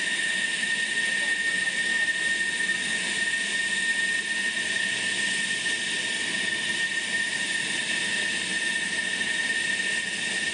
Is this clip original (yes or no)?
yes